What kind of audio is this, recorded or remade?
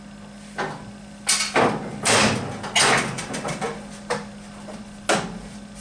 recorded